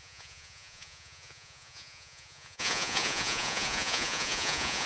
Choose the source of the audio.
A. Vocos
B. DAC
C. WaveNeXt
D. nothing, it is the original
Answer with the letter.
A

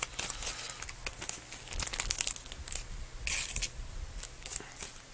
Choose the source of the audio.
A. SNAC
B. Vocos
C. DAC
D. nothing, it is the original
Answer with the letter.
D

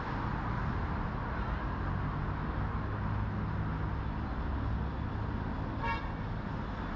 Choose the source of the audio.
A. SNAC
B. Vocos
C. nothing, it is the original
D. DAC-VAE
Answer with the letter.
C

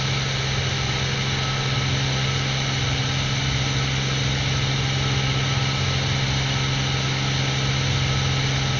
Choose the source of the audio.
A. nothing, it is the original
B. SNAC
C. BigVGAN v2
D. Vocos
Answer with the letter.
A